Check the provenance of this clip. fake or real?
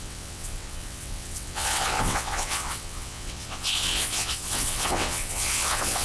fake